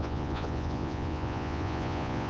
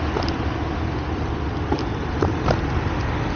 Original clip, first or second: second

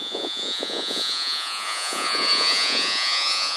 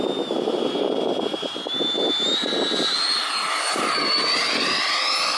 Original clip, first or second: second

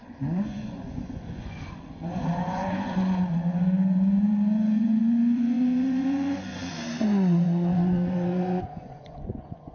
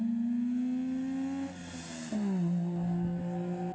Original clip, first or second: second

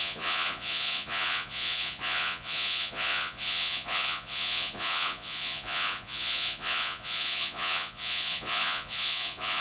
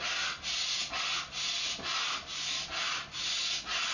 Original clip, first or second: second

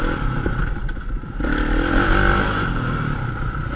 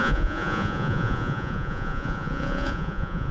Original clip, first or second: first